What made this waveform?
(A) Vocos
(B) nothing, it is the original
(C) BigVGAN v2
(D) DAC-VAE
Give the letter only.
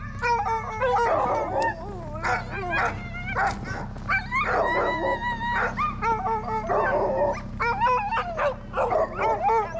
B